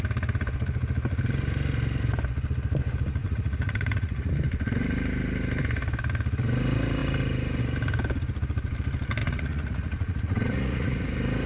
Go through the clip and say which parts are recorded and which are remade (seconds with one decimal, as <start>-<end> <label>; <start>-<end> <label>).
0.0-3.2 recorded; 3.2-4.3 remade; 4.3-9.2 recorded; 9.2-11.1 remade; 11.1-11.5 recorded